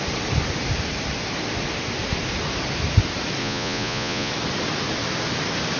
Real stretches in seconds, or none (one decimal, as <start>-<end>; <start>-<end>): 0.0-3.4; 4.3-5.8